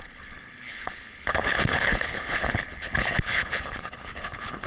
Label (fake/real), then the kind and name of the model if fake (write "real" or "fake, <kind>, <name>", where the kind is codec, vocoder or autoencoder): fake, codec, HILCodec